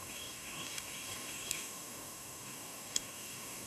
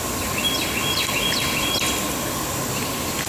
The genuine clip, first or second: second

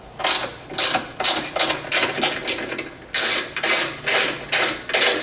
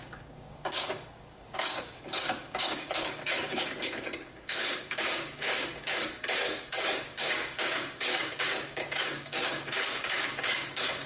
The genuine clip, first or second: first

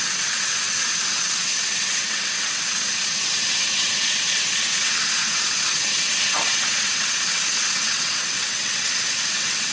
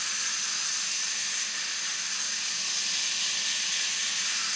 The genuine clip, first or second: second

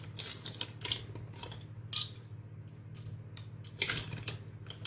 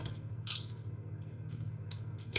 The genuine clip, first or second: first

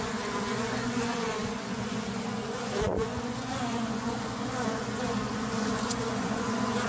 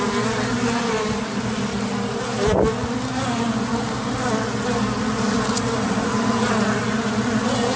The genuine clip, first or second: second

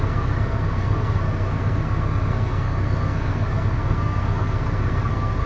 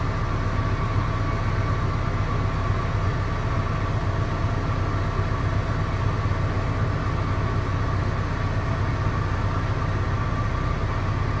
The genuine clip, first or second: second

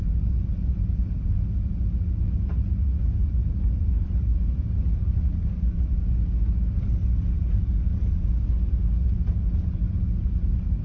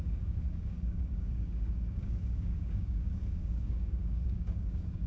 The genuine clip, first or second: first